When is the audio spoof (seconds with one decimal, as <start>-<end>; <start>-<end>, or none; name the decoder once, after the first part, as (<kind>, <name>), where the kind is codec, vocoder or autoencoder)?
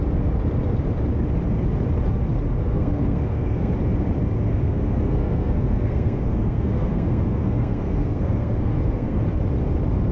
2.6-3.7 (codec, SNAC); 4.5-9.2